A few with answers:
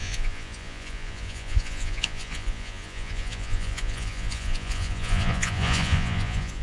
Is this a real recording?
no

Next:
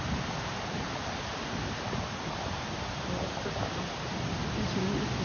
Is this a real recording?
yes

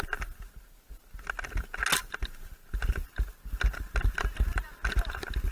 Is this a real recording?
yes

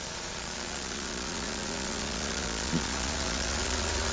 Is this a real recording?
no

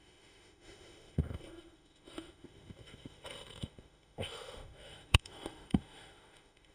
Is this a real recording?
no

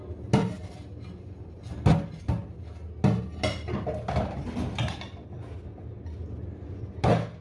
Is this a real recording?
yes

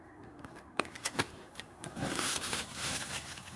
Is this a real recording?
no